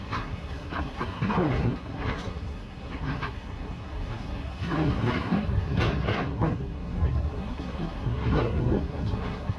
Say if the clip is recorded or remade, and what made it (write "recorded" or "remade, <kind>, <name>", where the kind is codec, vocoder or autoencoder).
remade, codec, SNAC